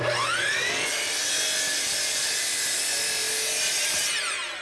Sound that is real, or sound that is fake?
real